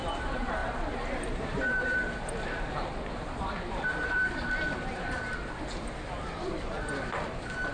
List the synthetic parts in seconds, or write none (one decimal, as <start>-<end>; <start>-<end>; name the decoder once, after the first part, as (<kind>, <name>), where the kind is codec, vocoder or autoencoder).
0.6-5.2 (vocoder, BigVGAN v2)